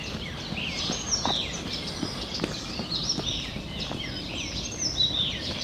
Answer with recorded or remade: recorded